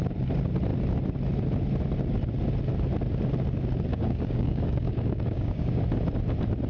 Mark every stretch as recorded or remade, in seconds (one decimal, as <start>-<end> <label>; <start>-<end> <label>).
0.0-3.9 recorded; 3.9-5.8 remade; 5.8-6.7 recorded